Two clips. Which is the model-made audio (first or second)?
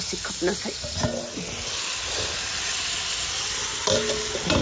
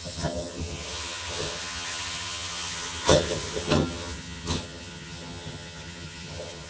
second